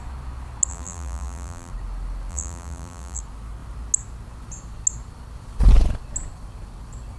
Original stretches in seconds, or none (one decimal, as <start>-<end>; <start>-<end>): 0.0-0.7; 1.7-2.3; 3.2-7.2